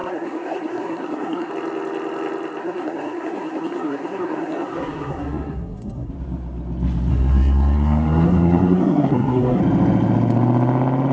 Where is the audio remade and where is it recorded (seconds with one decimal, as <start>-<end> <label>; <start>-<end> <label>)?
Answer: 0.0-1.5 remade; 1.5-2.6 recorded; 2.6-6.1 remade; 6.1-7.1 recorded; 7.1-9.6 remade; 9.6-11.1 recorded